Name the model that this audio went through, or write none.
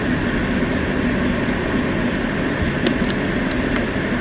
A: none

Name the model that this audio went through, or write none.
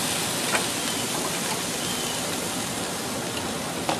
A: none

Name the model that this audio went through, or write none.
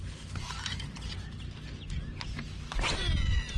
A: none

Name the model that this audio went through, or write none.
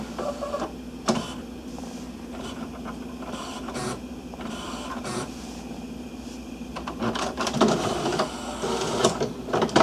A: vocoder, BigVGAN v2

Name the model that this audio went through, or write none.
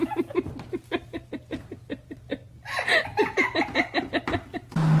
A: none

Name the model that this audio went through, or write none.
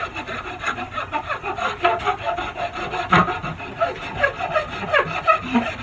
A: none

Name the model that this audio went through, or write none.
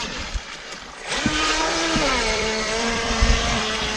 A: vocoder, BigVGAN v2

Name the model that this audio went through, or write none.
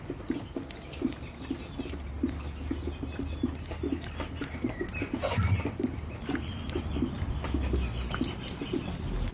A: vocoder, BigVGAN v2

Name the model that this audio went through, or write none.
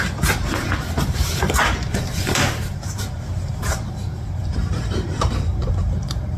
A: vocoder, BigVGAN v2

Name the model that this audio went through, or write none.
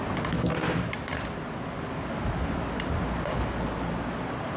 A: none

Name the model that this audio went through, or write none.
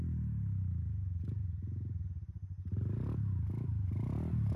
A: none